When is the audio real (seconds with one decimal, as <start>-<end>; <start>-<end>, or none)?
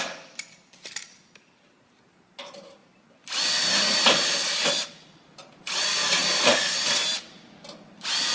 0.0-8.3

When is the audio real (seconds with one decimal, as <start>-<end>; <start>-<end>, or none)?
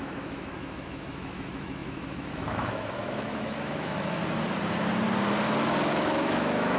4.2-5.9